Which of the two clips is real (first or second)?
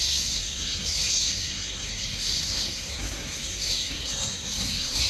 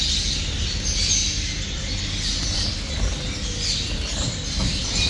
second